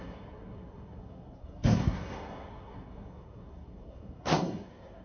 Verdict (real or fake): fake